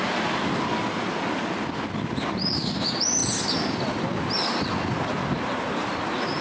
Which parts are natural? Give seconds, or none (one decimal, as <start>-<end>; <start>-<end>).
0.0-6.4